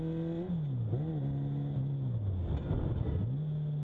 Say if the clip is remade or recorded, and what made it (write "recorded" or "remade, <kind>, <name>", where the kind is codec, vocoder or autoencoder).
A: recorded